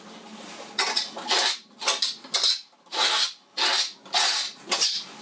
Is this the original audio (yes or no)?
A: yes